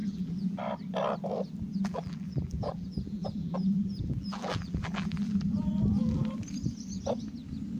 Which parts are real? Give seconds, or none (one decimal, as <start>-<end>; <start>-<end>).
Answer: 0.6-1.7; 5.7-7.8